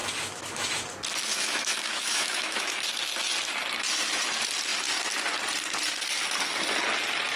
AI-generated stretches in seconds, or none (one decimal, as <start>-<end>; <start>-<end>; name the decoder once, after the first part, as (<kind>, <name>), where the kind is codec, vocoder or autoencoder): 0.0-0.7 (autoencoder, DAC-VAE); 1.3-2.8